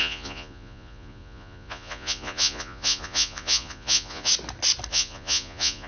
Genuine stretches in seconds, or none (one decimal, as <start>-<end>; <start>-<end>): 4.3-4.9